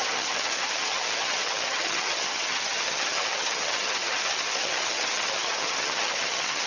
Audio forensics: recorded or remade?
remade